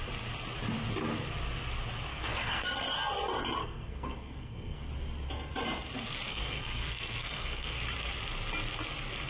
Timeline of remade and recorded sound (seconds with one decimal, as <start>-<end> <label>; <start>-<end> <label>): 0.0-2.1 recorded; 2.1-2.6 remade; 2.6-3.6 recorded; 3.6-4.9 remade; 4.9-6.3 recorded; 6.3-7.8 remade; 7.8-9.3 recorded